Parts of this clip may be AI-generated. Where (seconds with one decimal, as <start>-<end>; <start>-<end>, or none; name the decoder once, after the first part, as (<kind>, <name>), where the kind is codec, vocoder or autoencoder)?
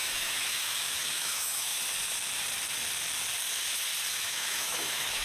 0.0-1.7 (autoencoder, DAC-VAE); 4.1-5.2